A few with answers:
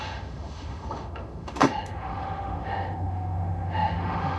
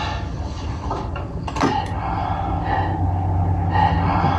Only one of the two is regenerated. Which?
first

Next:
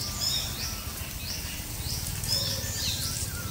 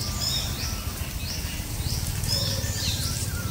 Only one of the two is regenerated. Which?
second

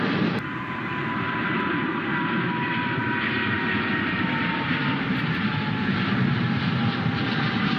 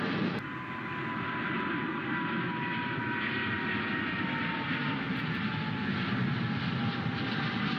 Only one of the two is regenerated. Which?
first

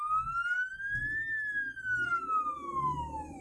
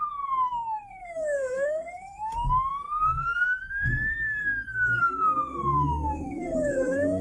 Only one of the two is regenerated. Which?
second